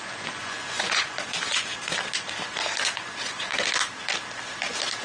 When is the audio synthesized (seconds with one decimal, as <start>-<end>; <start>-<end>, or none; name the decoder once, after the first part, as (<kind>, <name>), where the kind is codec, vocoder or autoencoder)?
0.0-1.7 (vocoder, Vocos); 2.8-3.5